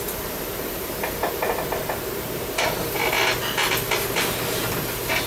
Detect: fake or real real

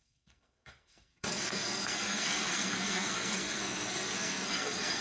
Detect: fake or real fake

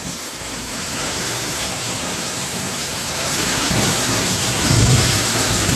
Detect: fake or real fake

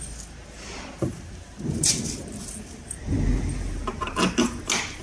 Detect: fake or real real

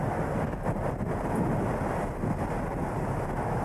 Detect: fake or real real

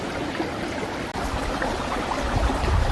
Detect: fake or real real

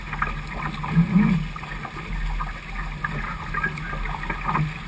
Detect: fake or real real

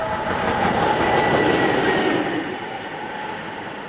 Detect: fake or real real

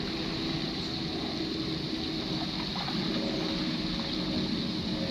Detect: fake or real real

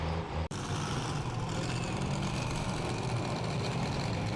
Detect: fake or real fake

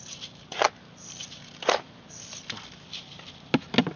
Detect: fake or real real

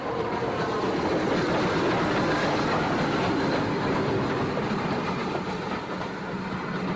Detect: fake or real real